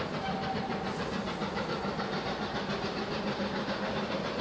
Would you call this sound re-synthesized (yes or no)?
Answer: no